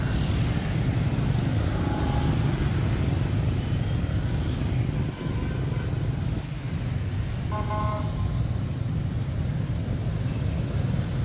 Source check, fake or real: real